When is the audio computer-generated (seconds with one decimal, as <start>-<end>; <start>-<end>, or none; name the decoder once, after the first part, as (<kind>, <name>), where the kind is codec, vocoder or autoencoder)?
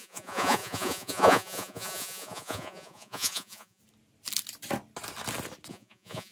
0.0-3.8 (vocoder, Vocos); 5.7-6.3